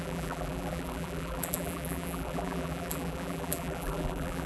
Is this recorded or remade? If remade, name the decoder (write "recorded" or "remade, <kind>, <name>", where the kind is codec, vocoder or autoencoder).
remade, vocoder, BigVGAN v2